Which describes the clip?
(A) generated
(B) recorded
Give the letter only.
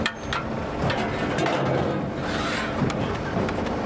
B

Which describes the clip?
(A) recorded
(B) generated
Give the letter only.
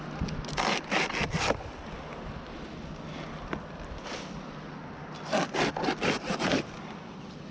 A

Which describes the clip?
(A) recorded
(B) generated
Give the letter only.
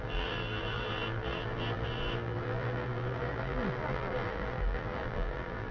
B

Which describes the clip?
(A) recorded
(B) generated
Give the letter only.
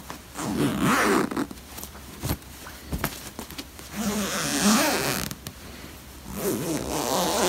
B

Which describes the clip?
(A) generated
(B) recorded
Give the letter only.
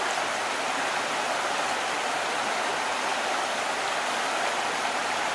B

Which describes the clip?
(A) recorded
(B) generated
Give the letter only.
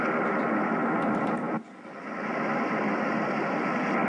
B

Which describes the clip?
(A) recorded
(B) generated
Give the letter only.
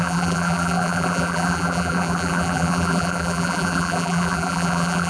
B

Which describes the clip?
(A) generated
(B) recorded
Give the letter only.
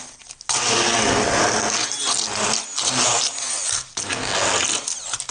B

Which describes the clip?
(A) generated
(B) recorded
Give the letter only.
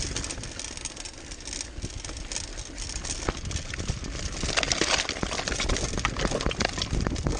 B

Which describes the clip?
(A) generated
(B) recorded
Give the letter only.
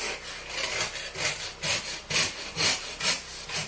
B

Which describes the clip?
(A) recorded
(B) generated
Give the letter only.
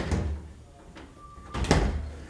A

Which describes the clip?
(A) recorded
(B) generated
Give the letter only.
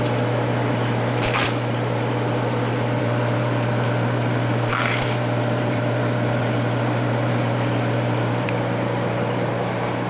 B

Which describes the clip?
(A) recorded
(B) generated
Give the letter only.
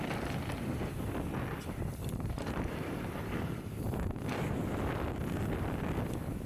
A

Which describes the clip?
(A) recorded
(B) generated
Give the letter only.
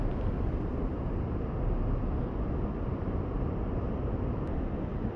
A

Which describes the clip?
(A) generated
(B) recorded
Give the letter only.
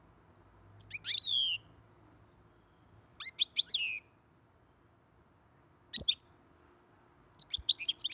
B